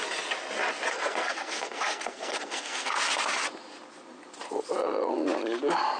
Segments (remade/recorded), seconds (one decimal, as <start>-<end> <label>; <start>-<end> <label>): 0.0-0.9 recorded; 0.9-2.9 remade; 2.9-6.0 recorded